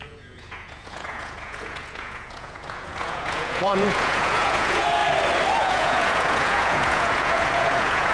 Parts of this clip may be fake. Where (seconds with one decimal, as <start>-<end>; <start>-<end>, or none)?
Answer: 0.0-5.0; 5.6-8.1